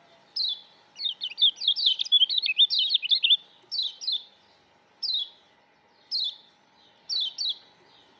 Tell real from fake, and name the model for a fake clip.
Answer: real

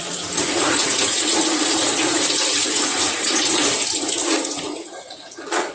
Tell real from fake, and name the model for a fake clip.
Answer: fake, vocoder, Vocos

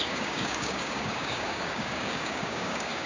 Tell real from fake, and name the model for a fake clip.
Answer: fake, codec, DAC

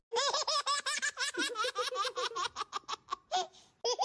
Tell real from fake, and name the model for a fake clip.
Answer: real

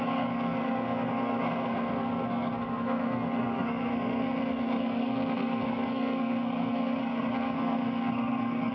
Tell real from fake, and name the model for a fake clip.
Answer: fake, codec, SNAC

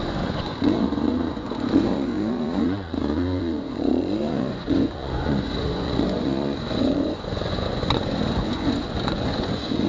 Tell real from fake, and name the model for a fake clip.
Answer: fake, vocoder, Vocos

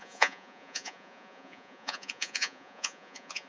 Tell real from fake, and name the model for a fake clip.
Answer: fake, vocoder, Vocos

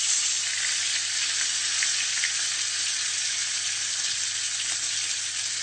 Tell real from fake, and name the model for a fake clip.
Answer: real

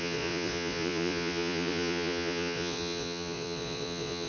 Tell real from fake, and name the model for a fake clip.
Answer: fake, vocoder, Vocos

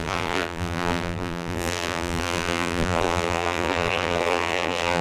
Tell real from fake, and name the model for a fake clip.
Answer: fake, vocoder, BigVGAN v2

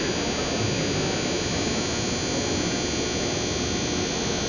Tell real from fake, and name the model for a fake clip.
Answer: real